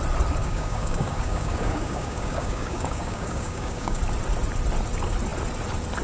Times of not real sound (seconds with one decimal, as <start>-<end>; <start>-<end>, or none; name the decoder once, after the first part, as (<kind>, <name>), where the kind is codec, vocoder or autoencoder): 0.4-4.0 (codec, DAC)